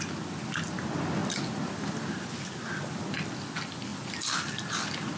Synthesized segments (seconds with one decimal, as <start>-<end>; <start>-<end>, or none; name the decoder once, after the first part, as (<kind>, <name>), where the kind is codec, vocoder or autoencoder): 1.2-2.1 (vocoder, BigVGAN v2); 3.9-4.6